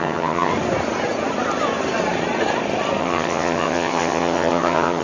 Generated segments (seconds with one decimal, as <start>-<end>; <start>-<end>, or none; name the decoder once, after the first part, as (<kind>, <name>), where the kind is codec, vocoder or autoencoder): 0.0-0.5 (vocoder, HiFi-GAN); 3.0-5.0

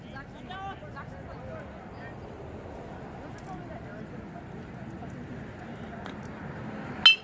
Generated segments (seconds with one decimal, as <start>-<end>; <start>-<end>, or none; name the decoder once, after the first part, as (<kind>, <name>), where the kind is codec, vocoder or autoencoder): 5.7-6.6 (vocoder, BigVGAN v2)

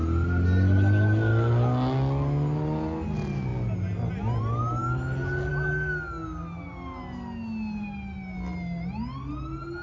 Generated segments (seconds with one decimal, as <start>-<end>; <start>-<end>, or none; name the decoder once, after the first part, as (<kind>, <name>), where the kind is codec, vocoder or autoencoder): none

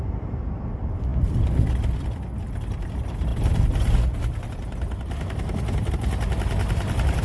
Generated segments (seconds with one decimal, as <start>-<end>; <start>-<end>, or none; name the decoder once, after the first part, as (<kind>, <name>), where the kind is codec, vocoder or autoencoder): none

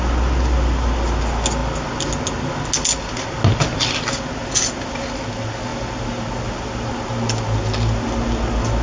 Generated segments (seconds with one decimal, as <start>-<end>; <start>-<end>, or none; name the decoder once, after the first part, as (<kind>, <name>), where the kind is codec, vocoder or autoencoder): none

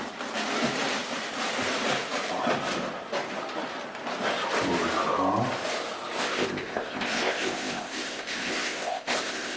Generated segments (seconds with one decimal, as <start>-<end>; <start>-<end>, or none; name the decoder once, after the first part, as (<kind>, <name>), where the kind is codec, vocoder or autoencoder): 6.2-9.6 (codec, ZipCodec)

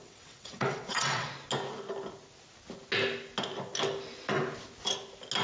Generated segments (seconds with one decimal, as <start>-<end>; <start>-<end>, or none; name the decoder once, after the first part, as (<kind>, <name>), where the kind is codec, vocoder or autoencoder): 0.0-1.3 (vocoder, WaveNeXt)